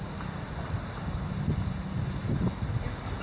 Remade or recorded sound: recorded